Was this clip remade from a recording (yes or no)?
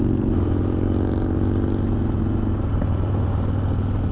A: no